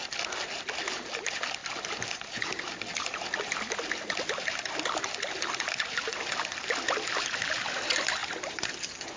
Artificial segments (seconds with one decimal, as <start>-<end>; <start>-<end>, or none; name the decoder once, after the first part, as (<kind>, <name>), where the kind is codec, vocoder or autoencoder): none